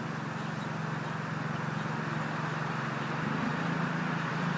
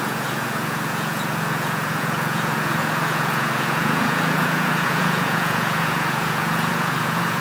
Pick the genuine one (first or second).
first